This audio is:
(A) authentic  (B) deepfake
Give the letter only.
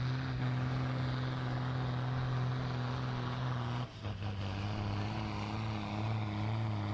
A